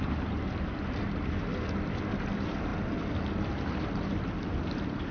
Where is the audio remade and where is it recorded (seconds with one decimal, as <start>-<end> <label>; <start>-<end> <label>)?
0.0-5.1 recorded